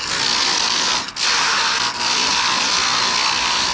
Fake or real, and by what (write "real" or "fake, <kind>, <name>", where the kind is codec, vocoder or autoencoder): real